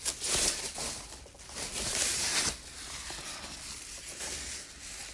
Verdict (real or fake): real